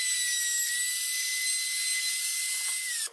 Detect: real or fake real